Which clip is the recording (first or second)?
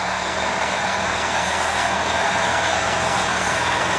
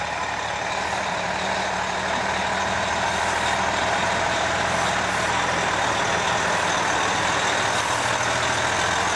second